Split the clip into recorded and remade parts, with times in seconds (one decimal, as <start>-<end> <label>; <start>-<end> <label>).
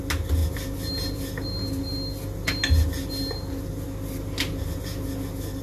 0.0-5.6 recorded